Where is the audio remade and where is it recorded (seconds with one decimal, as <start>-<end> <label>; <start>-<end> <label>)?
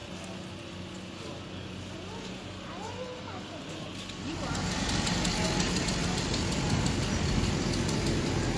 0.0-8.6 recorded